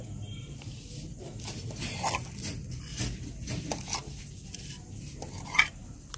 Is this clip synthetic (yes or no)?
no